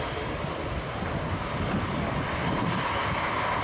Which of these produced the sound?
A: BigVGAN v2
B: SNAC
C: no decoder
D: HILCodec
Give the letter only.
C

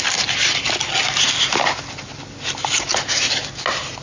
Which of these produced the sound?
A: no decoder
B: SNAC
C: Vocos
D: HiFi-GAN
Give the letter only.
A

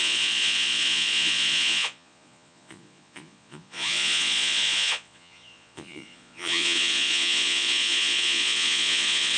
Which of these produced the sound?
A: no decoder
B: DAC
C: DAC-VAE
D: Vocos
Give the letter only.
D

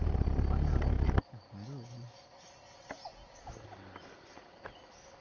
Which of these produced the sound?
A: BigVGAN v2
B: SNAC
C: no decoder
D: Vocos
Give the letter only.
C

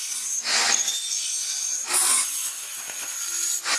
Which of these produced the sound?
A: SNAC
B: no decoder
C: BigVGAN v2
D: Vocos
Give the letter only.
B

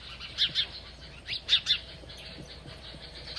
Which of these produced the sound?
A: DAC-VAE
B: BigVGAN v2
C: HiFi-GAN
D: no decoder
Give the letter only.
D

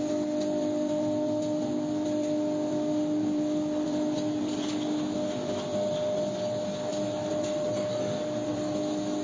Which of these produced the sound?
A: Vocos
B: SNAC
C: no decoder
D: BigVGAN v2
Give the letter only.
C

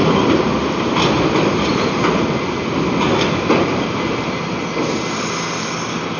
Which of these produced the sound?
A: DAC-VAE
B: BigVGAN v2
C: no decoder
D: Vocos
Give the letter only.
C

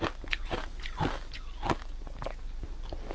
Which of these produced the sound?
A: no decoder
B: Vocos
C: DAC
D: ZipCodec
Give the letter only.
A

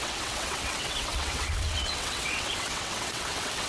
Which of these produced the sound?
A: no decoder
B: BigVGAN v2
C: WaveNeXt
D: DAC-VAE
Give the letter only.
C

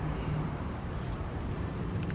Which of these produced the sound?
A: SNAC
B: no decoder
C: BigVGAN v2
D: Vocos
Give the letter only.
C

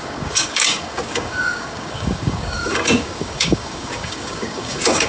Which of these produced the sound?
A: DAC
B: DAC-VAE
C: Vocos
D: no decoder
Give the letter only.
A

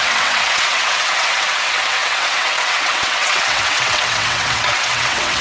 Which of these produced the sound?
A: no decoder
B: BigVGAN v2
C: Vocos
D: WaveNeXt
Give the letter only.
D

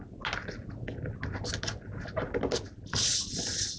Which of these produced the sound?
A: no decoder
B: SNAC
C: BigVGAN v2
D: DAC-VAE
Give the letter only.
A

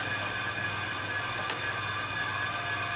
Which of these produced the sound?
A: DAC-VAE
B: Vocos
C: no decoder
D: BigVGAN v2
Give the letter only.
C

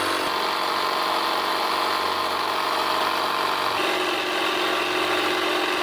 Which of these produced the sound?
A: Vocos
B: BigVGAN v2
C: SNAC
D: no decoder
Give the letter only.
D